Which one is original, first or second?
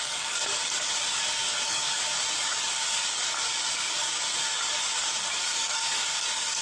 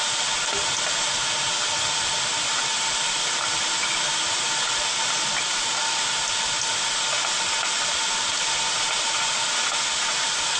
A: second